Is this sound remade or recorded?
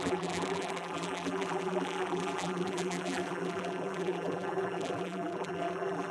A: remade